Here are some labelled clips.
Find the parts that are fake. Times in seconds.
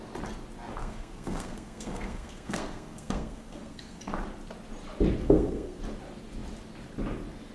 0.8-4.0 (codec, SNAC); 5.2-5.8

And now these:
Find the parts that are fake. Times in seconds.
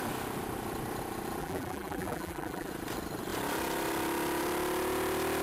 1.4-2.7 (vocoder, BigVGAN v2)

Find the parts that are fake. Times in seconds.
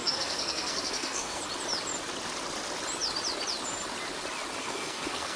0.0-1.4 (codec, SNAC); 4.6-5.4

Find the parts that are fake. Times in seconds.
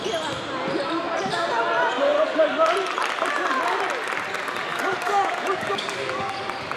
4.7-6.8 (codec, DAC)